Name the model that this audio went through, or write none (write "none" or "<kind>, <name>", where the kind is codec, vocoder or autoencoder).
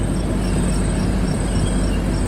none